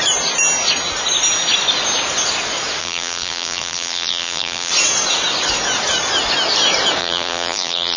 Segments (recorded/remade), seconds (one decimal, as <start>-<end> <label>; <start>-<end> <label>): 0.0-2.8 recorded; 2.8-4.7 remade; 4.7-7.0 recorded; 7.0-8.0 remade